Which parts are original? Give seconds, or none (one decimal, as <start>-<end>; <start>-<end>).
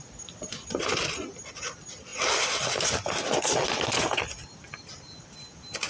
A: 0.0-5.9